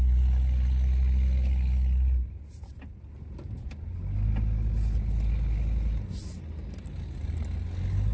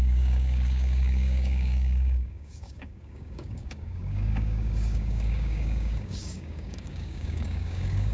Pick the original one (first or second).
first